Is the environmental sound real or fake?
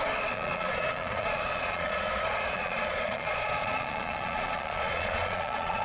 fake